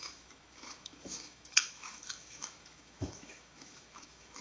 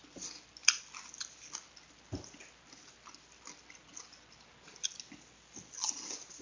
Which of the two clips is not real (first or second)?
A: first